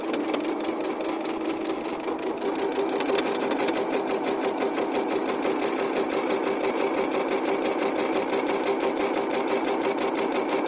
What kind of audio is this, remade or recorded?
recorded